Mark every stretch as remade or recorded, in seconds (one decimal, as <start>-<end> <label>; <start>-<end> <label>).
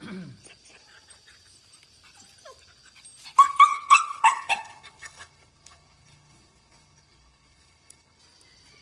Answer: 0.0-3.7 recorded; 3.7-8.2 remade; 8.2-8.8 recorded